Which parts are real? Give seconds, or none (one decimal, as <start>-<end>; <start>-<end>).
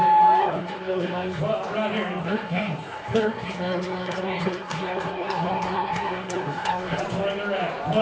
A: 0.0-0.4; 1.4-2.2; 7.0-8.0